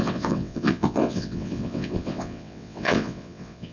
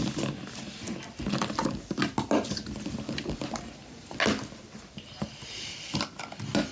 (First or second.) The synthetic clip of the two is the first